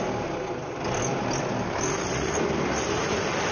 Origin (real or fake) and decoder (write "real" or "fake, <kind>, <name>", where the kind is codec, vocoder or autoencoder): real